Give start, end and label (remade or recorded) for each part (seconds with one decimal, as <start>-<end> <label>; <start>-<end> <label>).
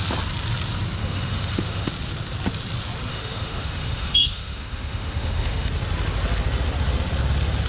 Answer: 0.0-1.0 recorded; 1.0-1.9 remade; 1.9-3.1 recorded; 3.1-5.7 remade; 5.7-7.7 recorded